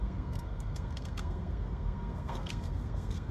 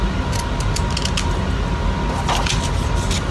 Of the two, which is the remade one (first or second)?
first